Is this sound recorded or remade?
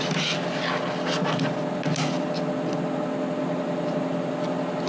recorded